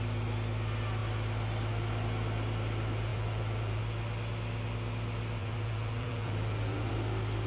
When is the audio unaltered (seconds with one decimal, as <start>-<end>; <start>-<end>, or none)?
0.0-3.1; 3.8-5.4; 6.9-7.5